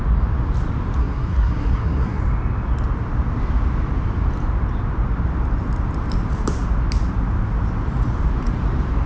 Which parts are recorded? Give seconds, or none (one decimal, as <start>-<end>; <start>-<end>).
0.0-1.0; 2.2-9.1